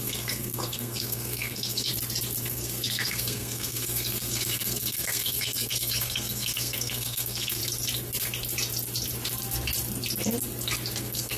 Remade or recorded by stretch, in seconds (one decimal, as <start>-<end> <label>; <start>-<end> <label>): 0.0-1.9 remade; 1.9-2.4 recorded; 2.4-7.6 remade; 7.6-11.0 recorded; 11.0-11.4 remade